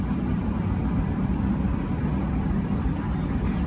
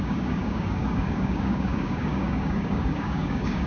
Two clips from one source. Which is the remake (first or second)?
second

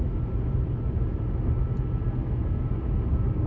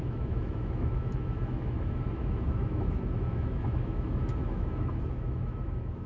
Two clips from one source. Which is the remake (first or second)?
second